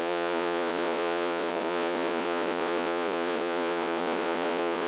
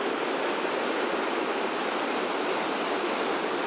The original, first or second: second